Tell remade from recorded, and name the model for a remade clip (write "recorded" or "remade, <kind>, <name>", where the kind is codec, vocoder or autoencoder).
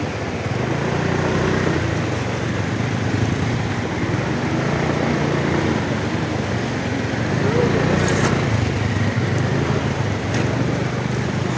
recorded